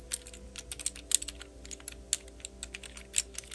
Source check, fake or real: real